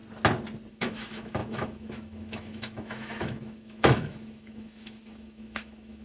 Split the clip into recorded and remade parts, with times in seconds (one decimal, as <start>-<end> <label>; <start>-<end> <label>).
0.0-0.7 recorded; 0.7-6.0 remade